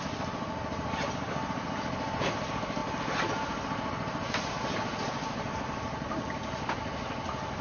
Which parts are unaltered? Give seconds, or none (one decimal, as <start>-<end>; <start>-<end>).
0.0-7.6